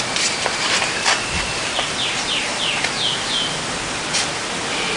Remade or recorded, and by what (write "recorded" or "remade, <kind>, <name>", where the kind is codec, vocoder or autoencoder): recorded